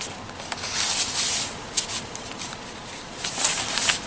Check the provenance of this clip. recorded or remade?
recorded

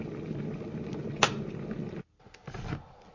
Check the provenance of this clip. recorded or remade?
recorded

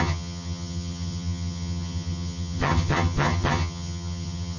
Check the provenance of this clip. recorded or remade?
remade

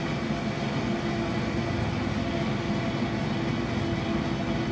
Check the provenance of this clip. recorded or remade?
recorded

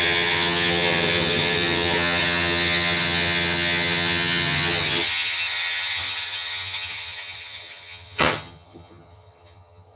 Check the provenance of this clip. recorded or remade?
remade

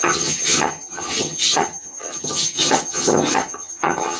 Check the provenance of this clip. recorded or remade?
remade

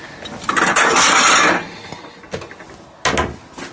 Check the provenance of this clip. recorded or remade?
recorded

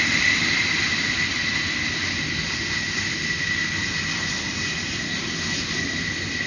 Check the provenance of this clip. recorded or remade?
recorded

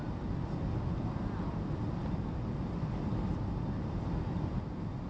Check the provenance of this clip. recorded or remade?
recorded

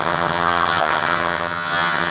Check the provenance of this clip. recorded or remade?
remade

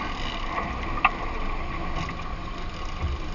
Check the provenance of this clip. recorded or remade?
recorded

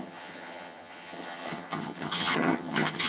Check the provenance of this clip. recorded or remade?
remade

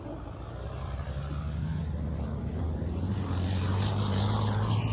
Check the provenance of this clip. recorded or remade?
recorded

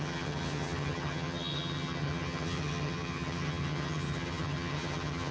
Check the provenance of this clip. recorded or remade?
remade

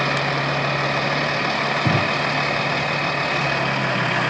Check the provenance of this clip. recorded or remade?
recorded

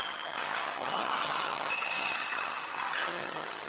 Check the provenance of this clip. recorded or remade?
remade